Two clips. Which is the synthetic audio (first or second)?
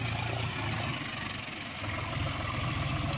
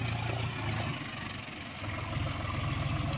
first